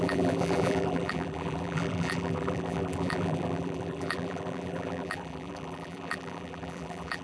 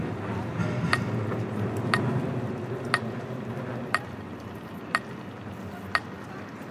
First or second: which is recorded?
second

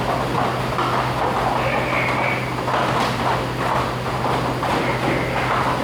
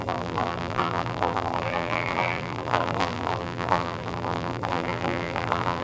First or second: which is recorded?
first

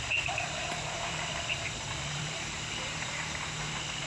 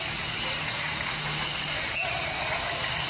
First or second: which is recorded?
second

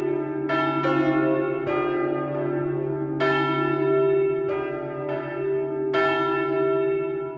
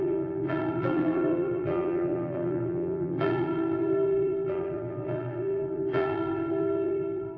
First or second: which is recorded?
first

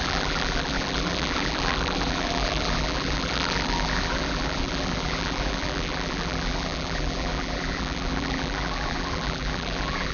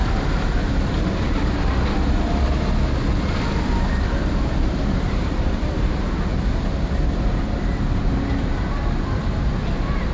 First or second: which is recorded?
second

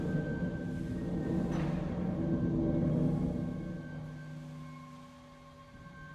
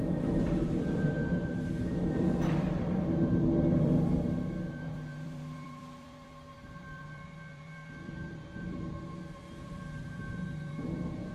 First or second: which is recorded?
first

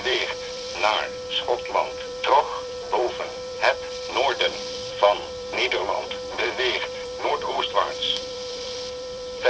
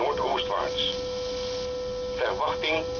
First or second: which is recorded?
second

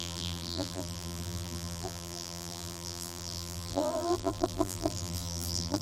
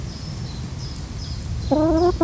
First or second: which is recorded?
second